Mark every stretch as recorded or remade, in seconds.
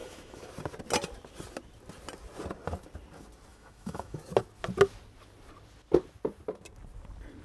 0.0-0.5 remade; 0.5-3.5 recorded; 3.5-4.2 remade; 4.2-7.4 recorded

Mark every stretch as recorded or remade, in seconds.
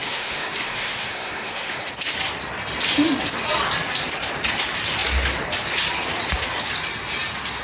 0.0-1.9 remade; 1.9-7.6 recorded